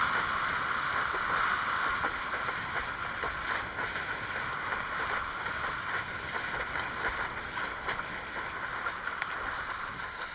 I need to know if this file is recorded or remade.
recorded